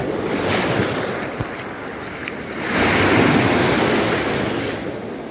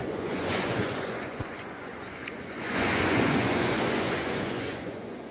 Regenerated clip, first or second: second